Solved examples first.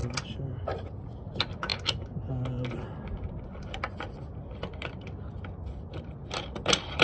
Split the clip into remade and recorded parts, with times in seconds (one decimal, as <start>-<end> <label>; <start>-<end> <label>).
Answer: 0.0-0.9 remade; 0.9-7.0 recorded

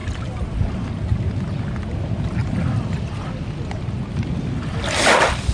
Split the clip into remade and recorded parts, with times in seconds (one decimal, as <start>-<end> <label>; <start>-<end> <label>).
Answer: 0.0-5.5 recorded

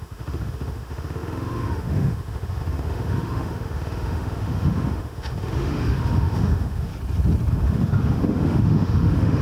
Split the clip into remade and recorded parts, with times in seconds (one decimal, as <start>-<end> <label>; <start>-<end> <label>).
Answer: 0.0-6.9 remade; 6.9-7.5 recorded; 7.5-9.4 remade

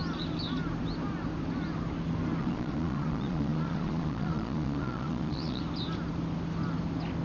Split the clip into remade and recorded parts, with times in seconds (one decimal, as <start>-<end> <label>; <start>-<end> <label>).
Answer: 0.0-2.4 recorded; 2.4-5.6 remade; 5.6-7.2 recorded

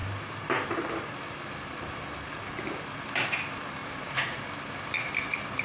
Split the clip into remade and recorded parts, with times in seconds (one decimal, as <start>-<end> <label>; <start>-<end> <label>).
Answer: 0.0-3.8 recorded; 3.8-4.4 remade; 4.4-5.6 recorded

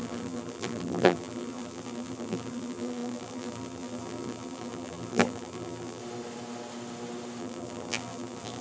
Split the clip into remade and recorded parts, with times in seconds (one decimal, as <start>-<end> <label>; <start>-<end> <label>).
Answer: 0.0-6.0 remade; 6.0-7.4 recorded; 7.4-8.6 remade

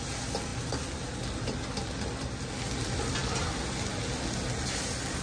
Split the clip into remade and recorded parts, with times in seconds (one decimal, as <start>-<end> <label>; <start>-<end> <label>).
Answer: 0.0-5.2 recorded